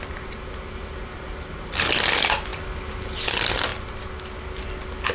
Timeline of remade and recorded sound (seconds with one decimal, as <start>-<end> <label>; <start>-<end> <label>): 0.0-5.1 recorded